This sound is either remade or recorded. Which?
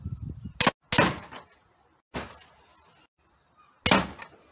recorded